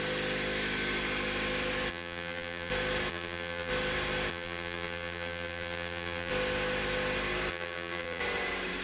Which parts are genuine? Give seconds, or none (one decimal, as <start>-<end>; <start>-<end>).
0.0-1.9; 2.7-3.1; 3.7-4.3; 6.3-7.5; 8.2-8.8